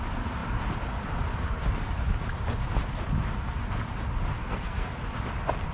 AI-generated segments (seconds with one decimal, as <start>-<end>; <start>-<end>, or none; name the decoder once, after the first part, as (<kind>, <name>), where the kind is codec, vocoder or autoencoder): 4.3-4.9 (codec, SNAC)